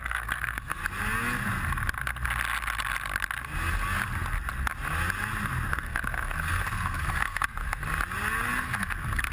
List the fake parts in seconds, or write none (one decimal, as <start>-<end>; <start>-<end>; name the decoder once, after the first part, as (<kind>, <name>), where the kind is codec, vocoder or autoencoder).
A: 0.0-0.8 (codec, SNAC); 5.7-7.8; 8.6-9.3